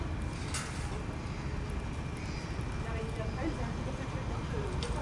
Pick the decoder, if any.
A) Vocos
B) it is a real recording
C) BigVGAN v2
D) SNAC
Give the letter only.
B